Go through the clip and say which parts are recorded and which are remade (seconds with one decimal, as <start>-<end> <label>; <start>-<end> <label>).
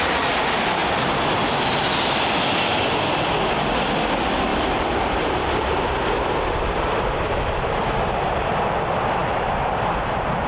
0.0-4.5 recorded; 4.5-8.7 remade; 8.7-10.5 recorded